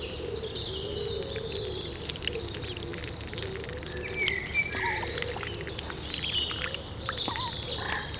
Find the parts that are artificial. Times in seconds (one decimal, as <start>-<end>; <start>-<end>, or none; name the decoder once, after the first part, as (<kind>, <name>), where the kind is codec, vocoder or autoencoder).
none